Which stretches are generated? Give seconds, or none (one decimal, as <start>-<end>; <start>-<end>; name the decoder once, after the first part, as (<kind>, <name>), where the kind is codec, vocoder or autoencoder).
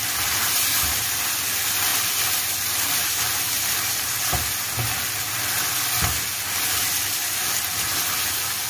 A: 1.9-3.9 (vocoder, BigVGAN v2)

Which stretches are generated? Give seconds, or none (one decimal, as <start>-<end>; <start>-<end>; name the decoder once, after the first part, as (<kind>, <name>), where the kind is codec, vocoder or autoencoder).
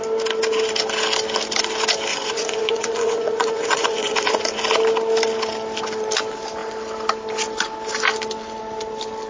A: 2.1-4.6 (vocoder, Vocos)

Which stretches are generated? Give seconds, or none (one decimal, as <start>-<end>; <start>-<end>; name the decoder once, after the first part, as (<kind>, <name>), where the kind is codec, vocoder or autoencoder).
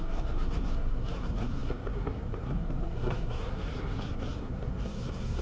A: 0.0-5.4 (codec, SNAC)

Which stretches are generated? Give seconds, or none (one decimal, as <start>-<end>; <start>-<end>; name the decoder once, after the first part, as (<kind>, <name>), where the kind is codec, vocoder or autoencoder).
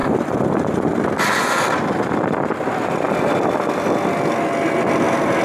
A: none